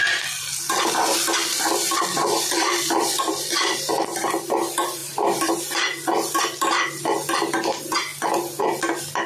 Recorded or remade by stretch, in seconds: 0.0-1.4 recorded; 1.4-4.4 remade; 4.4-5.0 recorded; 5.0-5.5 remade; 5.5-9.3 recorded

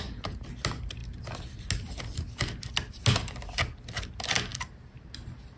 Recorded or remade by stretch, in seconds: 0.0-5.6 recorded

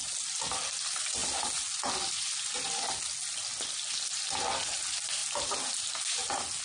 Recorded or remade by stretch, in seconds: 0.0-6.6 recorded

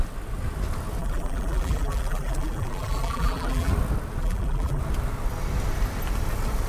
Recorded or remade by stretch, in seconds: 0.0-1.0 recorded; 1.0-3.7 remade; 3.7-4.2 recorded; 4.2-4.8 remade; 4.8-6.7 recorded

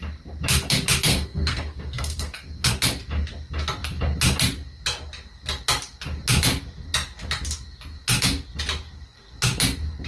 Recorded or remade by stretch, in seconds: 0.0-1.1 recorded; 1.1-2.7 remade; 2.7-10.1 recorded

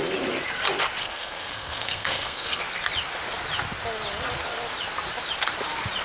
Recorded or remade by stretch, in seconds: 0.0-1.0 recorded; 1.0-2.6 remade; 2.6-6.0 recorded